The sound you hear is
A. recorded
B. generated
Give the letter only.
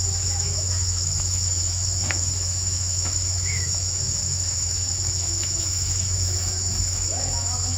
B